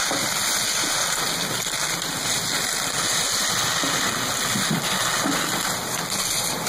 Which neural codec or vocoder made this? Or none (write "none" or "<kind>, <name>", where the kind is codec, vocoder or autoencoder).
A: none